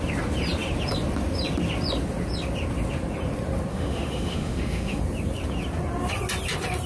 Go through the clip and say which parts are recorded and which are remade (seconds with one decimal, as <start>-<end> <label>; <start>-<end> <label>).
0.0-3.7 recorded; 3.7-5.0 remade; 5.0-6.9 recorded